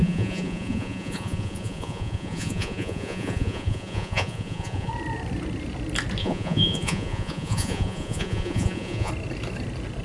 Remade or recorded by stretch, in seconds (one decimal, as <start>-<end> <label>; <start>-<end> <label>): 0.0-4.9 remade; 4.9-6.2 recorded; 6.2-9.1 remade; 9.1-10.0 recorded